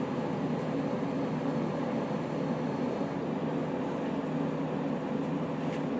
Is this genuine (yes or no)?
yes